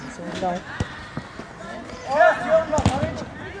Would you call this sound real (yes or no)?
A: yes